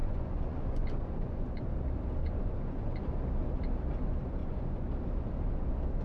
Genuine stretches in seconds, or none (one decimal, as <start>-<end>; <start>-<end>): 1.6-2.2; 3.0-4.4; 4.9-6.0